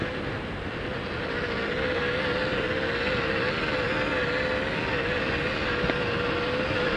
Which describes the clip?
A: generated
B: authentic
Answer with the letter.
B